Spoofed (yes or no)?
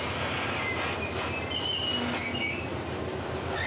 no